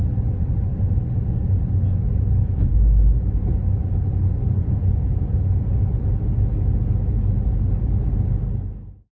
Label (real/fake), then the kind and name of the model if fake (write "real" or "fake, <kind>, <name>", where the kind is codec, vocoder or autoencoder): real